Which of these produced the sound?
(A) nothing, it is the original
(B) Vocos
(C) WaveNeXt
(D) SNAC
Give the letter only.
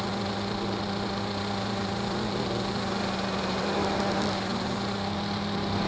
A